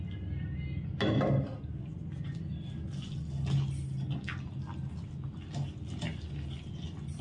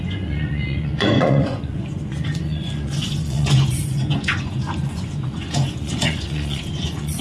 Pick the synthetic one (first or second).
second